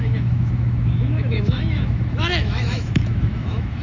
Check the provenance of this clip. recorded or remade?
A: remade